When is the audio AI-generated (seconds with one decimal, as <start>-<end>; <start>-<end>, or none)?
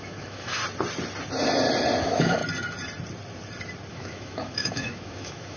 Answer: 0.0-0.6; 2.0-2.4; 3.9-5.6